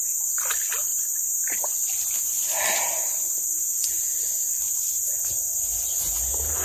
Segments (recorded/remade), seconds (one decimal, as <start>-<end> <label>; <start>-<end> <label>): 0.0-3.5 recorded; 3.5-5.9 remade; 5.9-6.6 recorded